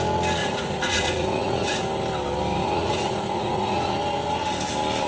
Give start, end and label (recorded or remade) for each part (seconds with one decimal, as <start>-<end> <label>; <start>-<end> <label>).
0.0-0.4 recorded; 0.4-1.8 remade; 1.8-2.6 recorded; 2.6-3.9 remade; 3.9-5.1 recorded